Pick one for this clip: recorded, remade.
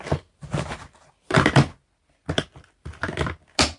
recorded